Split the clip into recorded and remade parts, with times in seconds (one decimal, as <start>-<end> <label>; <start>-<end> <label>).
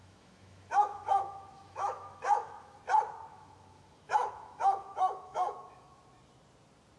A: 0.0-2.8 remade; 2.8-3.3 recorded; 3.3-6.0 remade; 6.0-7.0 recorded